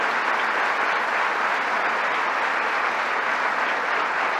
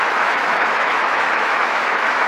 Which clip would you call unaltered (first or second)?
first